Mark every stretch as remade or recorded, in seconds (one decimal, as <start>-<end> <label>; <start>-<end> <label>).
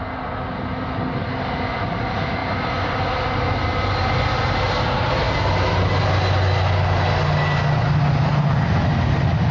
0.0-9.5 recorded